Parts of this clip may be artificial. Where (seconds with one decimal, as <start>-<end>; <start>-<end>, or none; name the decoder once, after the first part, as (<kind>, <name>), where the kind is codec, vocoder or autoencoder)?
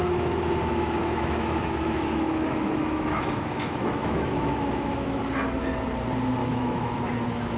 0.6-5.2 (autoencoder, DAC-VAE); 6.4-7.0